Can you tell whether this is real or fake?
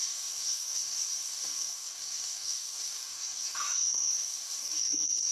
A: fake